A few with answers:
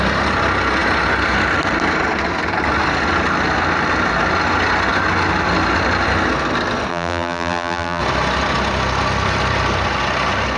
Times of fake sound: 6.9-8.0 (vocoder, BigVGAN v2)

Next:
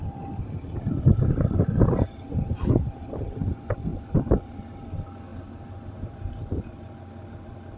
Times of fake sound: 3.9-4.4 (vocoder, BigVGAN v2); 5.3-6.6

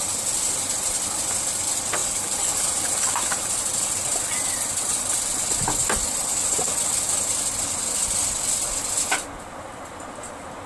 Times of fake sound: 2.0-3.9 (vocoder, BigVGAN v2)

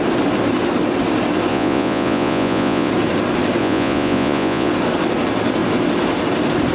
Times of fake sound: 1.5-2.9 (vocoder, Vocos); 3.6-4.7

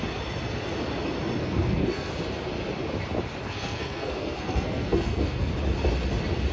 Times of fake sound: 1.4-2.1 (codec, SNAC); 3.4-5.5

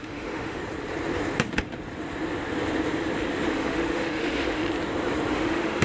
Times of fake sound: 0.0-0.6 (autoencoder, DAC-VAE); 3.5-4.6; 5.3-5.8